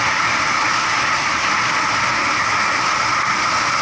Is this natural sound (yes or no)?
yes